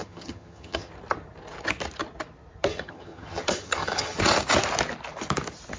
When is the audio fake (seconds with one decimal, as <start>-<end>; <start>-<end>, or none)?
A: 0.0-0.9; 2.7-4.2